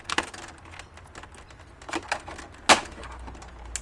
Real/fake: real